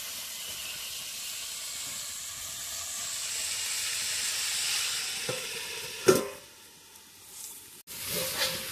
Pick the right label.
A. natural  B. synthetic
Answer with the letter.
A